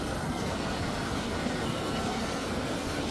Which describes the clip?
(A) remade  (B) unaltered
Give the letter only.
A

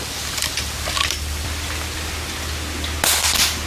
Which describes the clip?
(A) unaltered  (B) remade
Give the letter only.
A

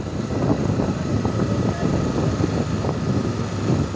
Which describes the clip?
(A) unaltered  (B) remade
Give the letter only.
A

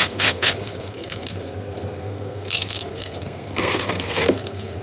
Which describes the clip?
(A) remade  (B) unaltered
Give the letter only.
A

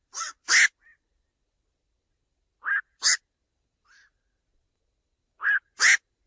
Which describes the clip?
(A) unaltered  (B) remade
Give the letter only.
A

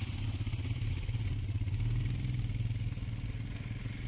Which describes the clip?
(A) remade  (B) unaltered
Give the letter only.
B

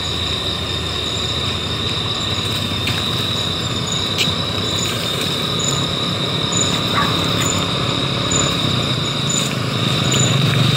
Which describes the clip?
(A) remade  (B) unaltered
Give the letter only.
A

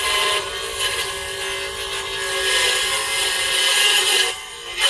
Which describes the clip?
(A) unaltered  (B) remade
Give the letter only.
A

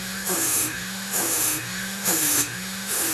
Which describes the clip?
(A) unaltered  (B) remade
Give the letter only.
B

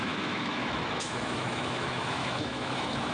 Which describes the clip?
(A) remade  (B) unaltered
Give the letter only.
A